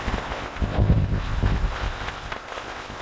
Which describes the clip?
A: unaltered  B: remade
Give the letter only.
B